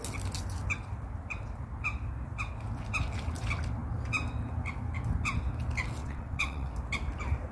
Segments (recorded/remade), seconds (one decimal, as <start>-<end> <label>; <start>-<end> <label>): 0.0-6.0 recorded; 6.0-6.7 remade; 6.7-7.5 recorded

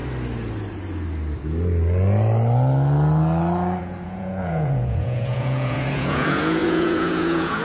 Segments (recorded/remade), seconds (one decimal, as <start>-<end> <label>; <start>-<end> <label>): 0.0-3.8 recorded; 3.8-7.6 remade